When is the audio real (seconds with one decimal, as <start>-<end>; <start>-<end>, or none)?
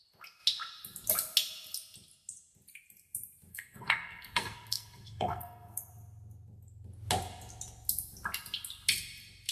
0.0-3.5; 5.9-9.5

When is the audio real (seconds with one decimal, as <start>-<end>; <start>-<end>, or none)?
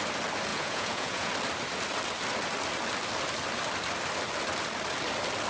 0.0-0.5; 1.3-5.5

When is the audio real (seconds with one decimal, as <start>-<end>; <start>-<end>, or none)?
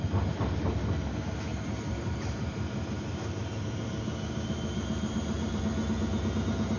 0.0-1.5; 5.6-6.8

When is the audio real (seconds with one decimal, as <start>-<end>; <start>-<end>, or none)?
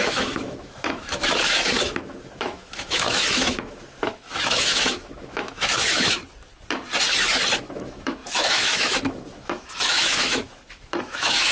6.2-7.6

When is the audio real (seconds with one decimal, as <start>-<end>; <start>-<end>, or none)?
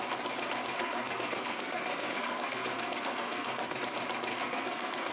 0.0-0.7; 3.8-4.3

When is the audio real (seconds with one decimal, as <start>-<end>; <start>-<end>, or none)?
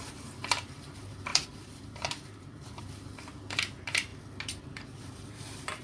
4.1-4.6